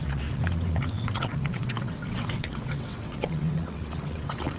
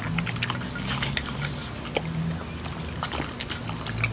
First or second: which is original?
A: second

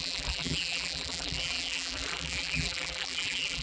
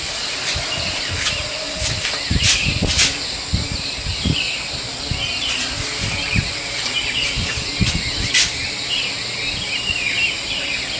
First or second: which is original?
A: second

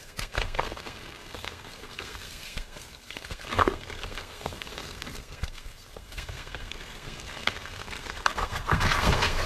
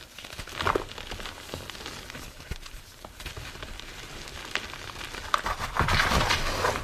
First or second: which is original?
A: second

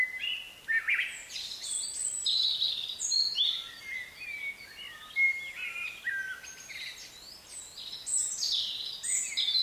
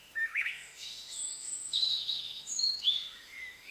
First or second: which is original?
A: first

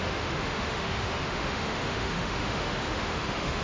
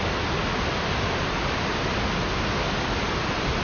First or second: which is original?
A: second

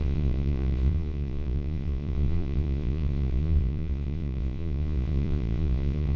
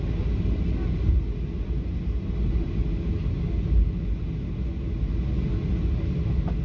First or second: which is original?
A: second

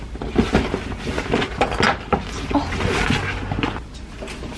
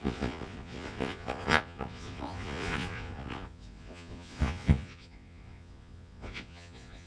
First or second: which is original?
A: first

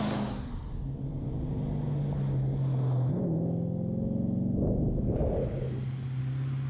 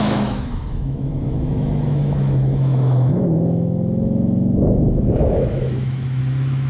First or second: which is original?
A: first